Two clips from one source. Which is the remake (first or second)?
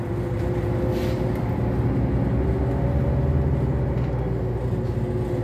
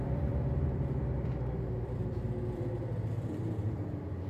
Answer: second